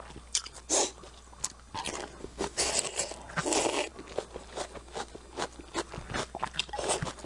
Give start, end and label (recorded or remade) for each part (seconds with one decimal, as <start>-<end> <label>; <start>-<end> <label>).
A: 0.0-2.2 recorded; 2.2-2.7 remade; 2.7-7.3 recorded